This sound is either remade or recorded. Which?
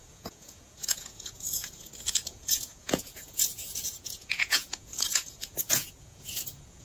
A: remade